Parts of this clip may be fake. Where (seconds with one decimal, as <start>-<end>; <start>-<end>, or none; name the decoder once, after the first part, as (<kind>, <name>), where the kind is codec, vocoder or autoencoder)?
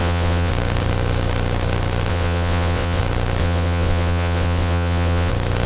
0.0-0.5 (vocoder, WaveNeXt); 2.1-3.0; 3.4-5.3